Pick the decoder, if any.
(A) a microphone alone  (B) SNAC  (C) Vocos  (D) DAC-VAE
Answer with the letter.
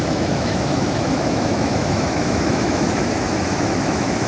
D